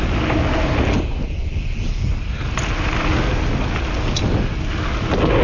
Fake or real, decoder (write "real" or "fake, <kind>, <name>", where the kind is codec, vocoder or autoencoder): real